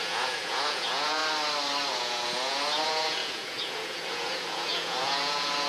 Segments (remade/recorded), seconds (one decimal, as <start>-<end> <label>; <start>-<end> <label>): 0.0-1.2 remade; 1.2-1.9 recorded; 1.9-5.7 remade